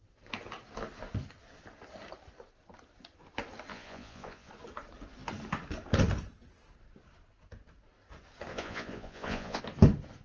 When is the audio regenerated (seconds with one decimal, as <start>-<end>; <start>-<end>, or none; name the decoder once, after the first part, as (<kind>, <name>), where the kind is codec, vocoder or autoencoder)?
3.7-4.5 (vocoder, Vocos); 8.5-9.6

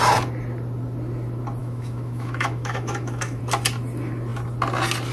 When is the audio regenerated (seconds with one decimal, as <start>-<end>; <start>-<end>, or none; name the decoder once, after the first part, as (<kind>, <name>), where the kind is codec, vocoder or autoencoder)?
1.6-3.4 (autoencoder, DAC-VAE)

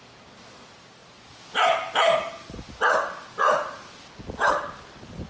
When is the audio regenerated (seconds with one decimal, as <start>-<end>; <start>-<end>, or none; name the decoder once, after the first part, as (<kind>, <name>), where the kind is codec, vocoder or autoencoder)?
none

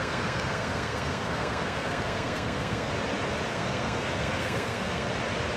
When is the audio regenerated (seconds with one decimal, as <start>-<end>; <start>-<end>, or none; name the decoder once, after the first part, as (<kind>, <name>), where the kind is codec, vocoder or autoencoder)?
0.0-2.9 (codec, SNAC); 3.5-5.1